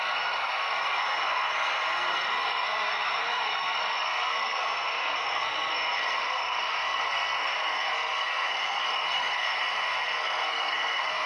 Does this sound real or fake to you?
fake